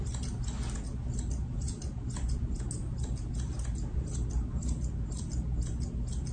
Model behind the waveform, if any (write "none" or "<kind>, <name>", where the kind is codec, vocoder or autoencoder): none